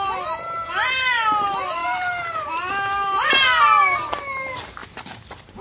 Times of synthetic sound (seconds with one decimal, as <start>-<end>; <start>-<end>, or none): 1.8-2.7